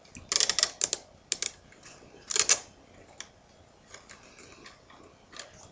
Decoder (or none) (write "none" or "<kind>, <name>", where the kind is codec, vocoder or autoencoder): none